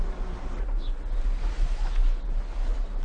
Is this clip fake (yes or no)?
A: no